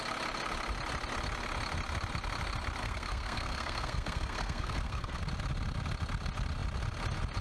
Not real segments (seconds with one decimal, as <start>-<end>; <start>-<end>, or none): 2.8-5.2

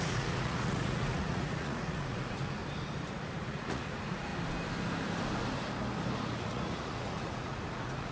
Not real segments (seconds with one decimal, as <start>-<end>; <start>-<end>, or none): 0.0-2.6; 3.4-4.3; 6.2-8.1

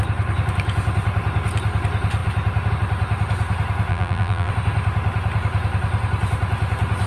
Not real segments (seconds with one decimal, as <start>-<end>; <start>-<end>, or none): 3.9-4.5

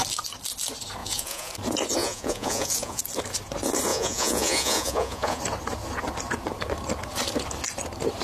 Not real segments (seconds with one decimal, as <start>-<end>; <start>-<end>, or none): 1.0-1.5; 2.0-3.0; 3.9-5.4

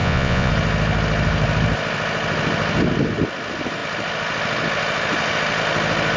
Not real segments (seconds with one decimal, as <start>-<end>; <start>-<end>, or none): 0.0-0.5

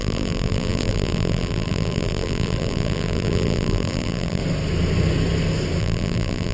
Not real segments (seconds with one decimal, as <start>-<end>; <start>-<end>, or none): 0.0-4.4; 5.8-6.5

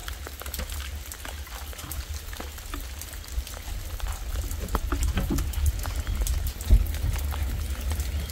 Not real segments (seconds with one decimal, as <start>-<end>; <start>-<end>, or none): none